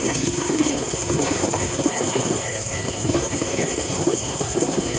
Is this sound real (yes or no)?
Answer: no